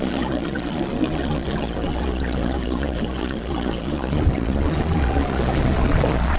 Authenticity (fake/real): fake